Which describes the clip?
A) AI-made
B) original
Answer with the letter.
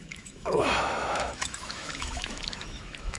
A